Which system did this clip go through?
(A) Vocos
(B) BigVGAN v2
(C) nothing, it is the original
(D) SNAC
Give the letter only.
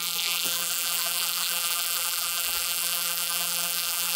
B